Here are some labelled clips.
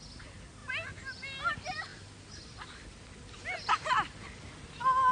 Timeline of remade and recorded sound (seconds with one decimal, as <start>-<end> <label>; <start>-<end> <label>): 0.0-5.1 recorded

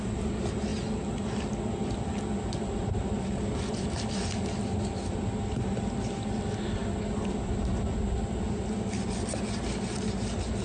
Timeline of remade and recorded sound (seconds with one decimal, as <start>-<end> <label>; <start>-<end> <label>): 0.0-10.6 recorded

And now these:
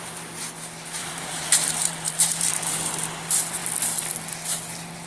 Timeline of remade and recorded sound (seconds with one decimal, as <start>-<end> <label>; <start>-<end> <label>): 0.0-1.0 recorded; 1.0-2.7 remade; 2.7-5.1 recorded